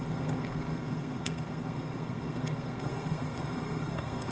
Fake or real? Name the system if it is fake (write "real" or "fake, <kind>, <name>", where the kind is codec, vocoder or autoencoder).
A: fake, codec, SNAC